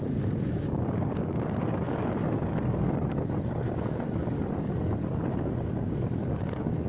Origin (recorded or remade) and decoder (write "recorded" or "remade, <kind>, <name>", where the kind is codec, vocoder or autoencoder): remade, codec, DAC